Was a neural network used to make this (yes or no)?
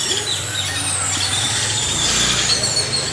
no